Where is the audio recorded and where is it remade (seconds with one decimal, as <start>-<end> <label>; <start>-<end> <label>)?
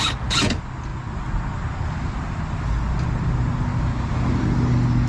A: 0.0-5.1 recorded